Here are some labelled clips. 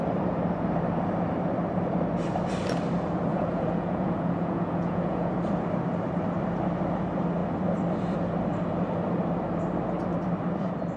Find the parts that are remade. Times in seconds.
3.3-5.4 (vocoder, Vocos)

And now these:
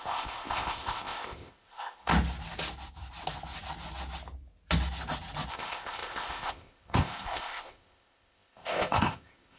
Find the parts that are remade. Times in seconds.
0.0-2.1 (codec, ZipCodec); 5.5-9.6

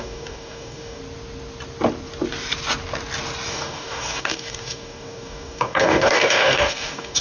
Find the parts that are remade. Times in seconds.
0.0-1.0 (codec, DAC); 3.5-7.2

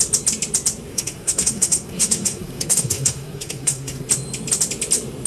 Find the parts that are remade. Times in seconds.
0.9-4.1 (codec, SNAC)

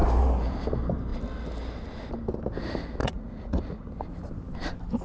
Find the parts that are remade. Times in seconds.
3.0-3.9 (vocoder, Vocos)

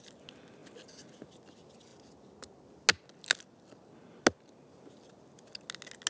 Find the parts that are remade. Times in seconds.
none